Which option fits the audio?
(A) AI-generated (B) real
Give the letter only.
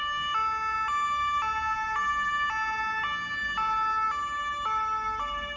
B